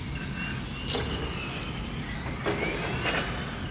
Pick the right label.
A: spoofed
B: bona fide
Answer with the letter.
B